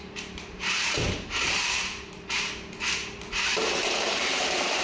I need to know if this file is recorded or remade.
remade